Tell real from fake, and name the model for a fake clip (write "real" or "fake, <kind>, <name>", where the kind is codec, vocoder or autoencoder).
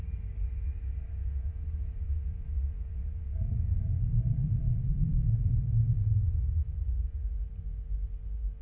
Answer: real